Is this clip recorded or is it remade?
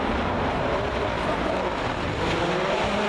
recorded